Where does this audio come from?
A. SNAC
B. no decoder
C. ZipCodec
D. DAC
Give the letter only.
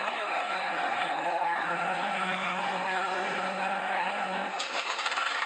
A